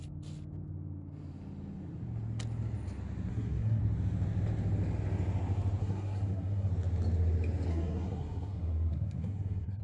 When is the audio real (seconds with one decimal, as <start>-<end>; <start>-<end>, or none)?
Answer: 0.0-3.3; 3.8-5.8; 6.7-7.7